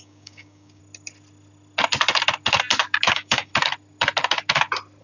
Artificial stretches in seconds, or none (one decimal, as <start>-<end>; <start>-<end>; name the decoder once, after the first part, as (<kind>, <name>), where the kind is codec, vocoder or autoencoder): 0.0-0.8 (codec, DAC); 3.1-3.5

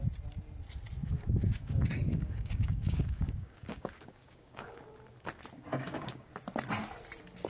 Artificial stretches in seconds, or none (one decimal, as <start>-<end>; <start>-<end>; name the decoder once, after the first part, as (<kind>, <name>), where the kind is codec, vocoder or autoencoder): 1.0-4.8 (codec, DAC); 5.7-6.3

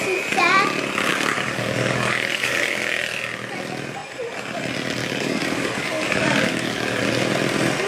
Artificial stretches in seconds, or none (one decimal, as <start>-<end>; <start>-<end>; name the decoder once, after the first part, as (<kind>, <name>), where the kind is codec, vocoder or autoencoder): 1.1-2.8 (codec, DAC); 5.0-7.0

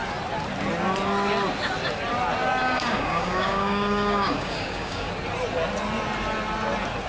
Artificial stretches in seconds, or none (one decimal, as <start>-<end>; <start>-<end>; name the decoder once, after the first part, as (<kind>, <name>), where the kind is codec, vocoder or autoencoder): 2.6-5.1 (codec, DAC)

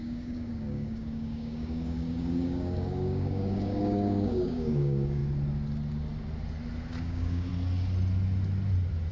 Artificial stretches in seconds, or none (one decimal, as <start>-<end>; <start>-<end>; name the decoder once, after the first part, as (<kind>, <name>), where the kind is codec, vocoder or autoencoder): 0.0-5.2 (codec, DAC); 7.0-7.5